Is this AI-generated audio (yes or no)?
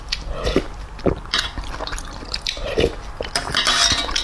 no